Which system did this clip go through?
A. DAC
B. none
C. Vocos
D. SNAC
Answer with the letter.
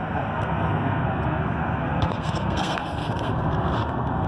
D